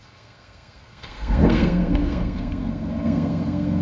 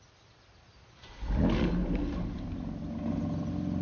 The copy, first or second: first